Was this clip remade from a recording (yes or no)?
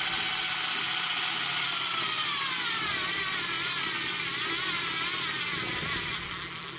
no